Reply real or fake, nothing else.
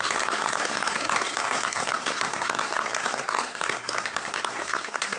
fake